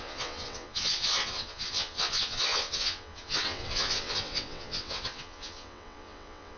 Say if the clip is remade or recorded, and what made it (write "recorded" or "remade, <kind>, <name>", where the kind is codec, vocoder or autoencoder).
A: remade, vocoder, WaveNeXt